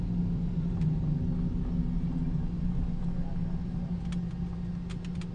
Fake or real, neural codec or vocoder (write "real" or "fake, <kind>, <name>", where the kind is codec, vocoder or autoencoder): real